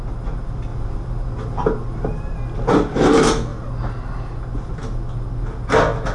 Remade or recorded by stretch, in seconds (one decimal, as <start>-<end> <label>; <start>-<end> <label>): 0.0-6.1 recorded